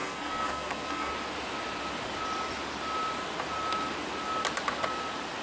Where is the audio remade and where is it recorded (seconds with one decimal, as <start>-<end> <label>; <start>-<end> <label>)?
0.0-1.1 remade; 1.1-5.4 recorded